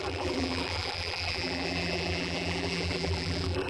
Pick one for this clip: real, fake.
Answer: fake